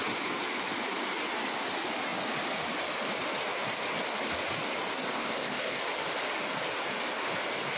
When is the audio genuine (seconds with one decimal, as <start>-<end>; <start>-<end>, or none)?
0.0-5.1; 5.8-7.8